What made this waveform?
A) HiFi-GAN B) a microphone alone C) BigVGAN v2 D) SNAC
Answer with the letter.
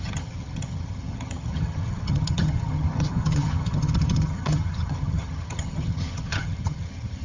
A